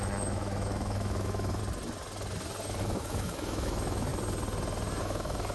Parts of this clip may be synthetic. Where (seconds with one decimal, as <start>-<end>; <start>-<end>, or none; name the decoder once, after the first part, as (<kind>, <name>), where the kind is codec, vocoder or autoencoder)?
0.0-1.6 (autoencoder, DAC-VAE); 2.8-4.1; 5.0-5.5